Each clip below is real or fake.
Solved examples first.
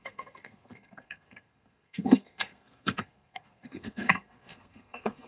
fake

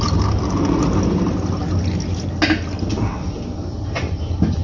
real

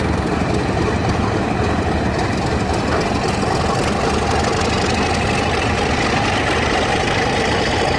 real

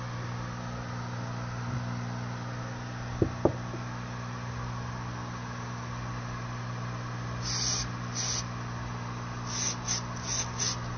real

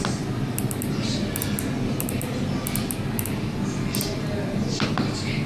real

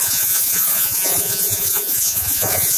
fake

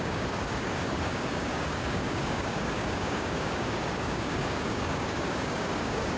fake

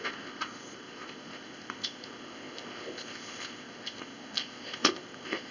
fake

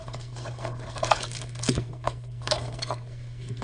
fake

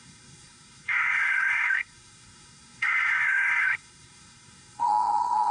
fake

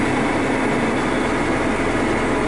real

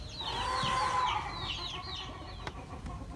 real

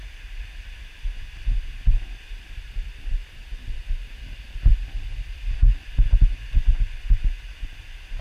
real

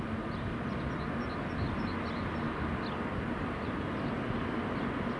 real